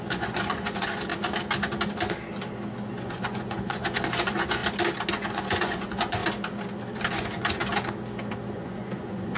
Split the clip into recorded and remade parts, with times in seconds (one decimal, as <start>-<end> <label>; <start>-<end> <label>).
0.0-1.1 remade; 1.1-2.9 recorded; 2.9-4.6 remade; 4.6-5.1 recorded; 5.1-6.2 remade; 6.2-7.1 recorded; 7.1-7.6 remade; 7.6-8.5 recorded; 8.5-9.4 remade